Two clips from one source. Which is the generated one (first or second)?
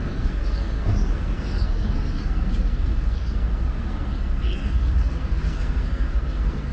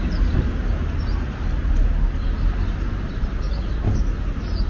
first